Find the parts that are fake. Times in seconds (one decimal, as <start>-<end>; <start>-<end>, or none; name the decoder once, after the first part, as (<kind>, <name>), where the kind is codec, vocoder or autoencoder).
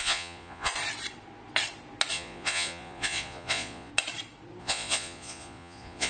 0.0-0.7 (vocoder, Vocos); 2.1-3.9; 4.6-6.1